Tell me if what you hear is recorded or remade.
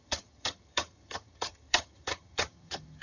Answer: remade